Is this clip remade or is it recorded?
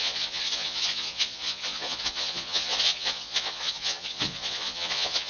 remade